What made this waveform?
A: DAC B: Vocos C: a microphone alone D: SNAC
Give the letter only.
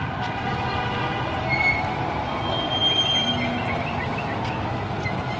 C